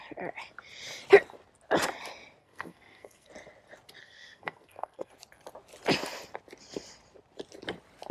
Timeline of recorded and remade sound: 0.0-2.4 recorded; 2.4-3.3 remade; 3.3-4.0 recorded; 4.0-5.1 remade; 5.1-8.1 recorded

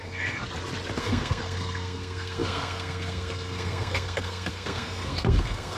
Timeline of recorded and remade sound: 0.0-0.4 remade; 0.4-1.0 recorded; 1.0-5.8 remade

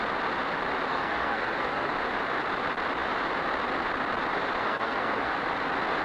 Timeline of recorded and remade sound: 0.0-0.9 recorded; 0.9-1.9 remade; 1.9-4.6 recorded; 4.6-5.3 remade; 5.3-6.0 recorded

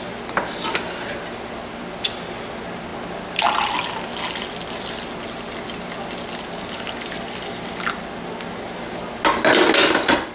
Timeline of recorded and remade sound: 0.0-10.3 recorded

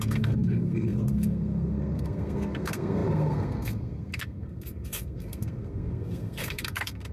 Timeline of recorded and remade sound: 0.0-7.1 remade

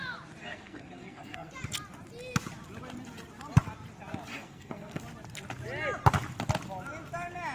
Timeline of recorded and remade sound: 0.0-0.4 recorded; 0.4-1.5 remade; 1.5-4.3 recorded; 4.3-5.0 remade; 5.0-7.5 recorded